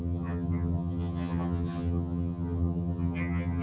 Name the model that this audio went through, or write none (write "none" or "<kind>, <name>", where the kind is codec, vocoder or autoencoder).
vocoder, HiFi-GAN